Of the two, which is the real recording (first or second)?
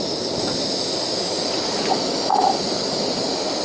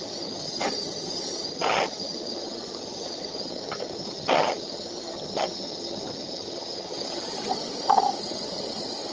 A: first